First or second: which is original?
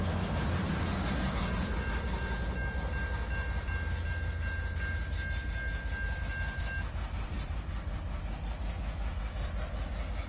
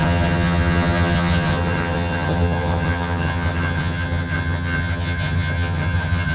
first